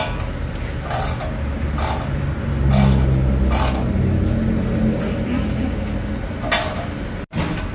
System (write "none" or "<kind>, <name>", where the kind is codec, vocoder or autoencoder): none